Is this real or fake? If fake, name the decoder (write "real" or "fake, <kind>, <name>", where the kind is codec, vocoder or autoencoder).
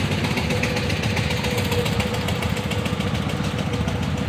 real